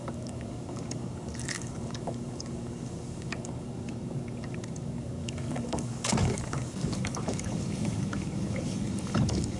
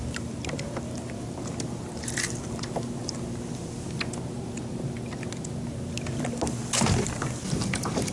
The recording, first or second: second